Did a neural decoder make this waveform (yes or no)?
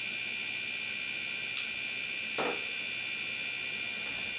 no